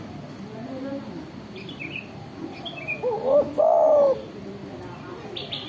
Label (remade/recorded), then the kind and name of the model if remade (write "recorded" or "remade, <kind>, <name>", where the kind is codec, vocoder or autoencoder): recorded